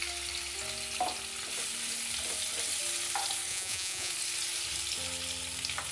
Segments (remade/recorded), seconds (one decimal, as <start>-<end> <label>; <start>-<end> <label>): 0.0-3.5 recorded; 3.5-4.1 remade; 4.1-5.9 recorded